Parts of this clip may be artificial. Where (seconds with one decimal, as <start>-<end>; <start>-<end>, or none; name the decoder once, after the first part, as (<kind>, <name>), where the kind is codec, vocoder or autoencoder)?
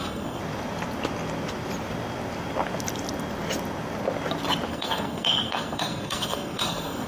0.0-0.4 (codec, SNAC); 4.7-7.1